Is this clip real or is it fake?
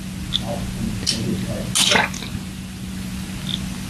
real